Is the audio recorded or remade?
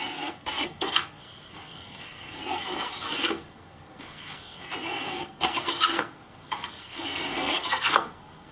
remade